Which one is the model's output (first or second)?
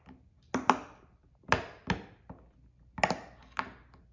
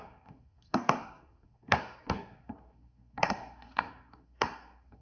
second